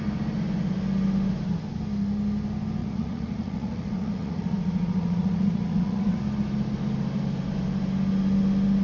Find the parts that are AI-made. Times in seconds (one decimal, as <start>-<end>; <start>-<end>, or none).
2.8-6.2